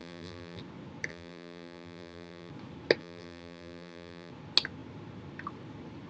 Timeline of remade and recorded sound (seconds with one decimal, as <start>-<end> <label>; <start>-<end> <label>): 0.0-0.6 remade; 0.6-1.1 recorded; 1.1-2.5 remade; 2.5-3.0 recorded; 3.0-4.3 remade; 4.3-6.1 recorded